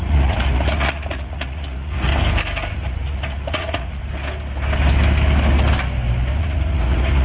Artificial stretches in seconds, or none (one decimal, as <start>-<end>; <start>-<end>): 0.0-2.1; 2.7-4.0; 6.4-7.2

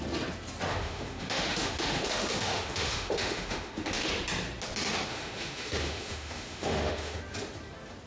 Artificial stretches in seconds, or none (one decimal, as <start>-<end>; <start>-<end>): 0.7-4.1; 5.1-7.2

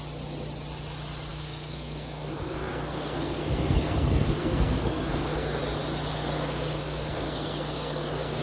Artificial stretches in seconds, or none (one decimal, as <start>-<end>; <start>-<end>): 1.3-5.6; 6.1-8.4